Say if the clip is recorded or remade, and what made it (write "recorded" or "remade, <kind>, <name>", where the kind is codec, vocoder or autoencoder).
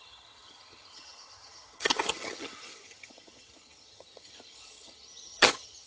remade, vocoder, HiFi-GAN